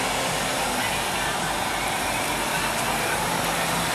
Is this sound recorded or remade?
recorded